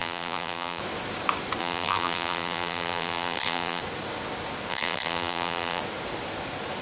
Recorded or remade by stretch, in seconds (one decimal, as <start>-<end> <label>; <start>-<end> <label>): 0.0-0.8 remade; 0.8-1.6 recorded; 1.6-3.8 remade; 3.8-4.7 recorded; 4.7-5.8 remade; 5.8-6.8 recorded